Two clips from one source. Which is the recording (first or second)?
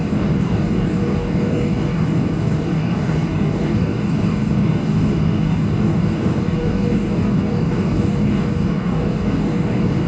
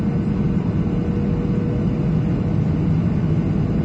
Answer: second